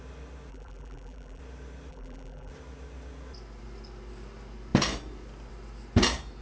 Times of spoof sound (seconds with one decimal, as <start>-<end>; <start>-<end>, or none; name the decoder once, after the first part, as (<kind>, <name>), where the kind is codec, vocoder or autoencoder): 0.5-1.4 (vocoder, BigVGAN v2); 1.9-2.5

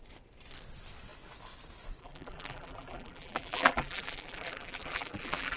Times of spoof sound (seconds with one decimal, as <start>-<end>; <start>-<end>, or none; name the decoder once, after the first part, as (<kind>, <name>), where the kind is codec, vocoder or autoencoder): 2.0-5.6 (vocoder, BigVGAN v2)

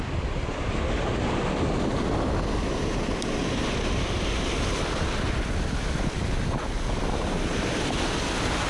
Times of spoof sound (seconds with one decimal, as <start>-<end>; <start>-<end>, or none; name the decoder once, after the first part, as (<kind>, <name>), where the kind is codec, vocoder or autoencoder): none

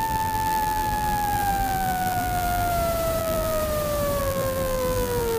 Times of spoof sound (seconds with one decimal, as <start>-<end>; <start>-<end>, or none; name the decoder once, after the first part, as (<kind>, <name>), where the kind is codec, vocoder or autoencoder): 0.0-2.7 (vocoder, BigVGAN v2); 3.2-3.6; 4.2-5.4

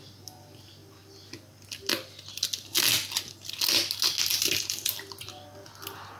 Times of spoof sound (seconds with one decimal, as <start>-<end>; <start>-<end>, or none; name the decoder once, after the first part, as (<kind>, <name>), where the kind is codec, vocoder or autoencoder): 4.3-4.9 (vocoder, BigVGAN v2)

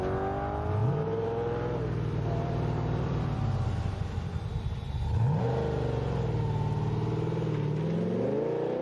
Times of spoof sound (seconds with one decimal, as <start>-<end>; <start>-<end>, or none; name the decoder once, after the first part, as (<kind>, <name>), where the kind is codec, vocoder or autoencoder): 0.8-5.4 (vocoder, BigVGAN v2)